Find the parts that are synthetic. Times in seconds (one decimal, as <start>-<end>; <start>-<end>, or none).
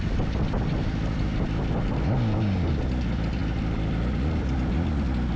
none